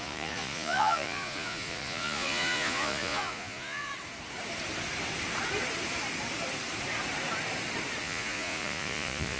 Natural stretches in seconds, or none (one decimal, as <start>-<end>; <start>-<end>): 3.9-8.0